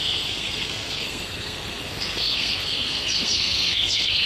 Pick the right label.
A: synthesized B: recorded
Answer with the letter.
A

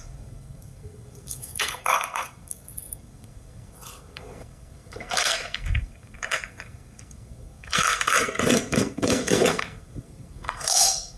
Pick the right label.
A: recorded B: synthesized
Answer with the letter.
B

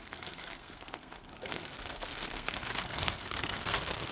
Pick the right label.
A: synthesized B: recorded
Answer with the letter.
A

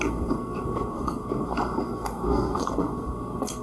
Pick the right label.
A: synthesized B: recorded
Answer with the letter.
A